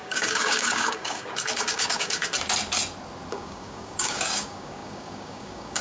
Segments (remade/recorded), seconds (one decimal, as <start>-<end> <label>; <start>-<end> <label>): 0.0-2.2 remade; 2.2-3.3 recorded; 3.3-5.8 remade